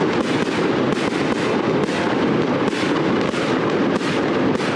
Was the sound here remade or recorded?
recorded